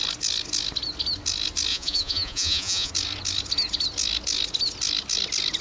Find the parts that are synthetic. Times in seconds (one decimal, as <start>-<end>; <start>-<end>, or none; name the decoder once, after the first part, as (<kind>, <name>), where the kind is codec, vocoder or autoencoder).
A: 1.7-2.9 (vocoder, Vocos)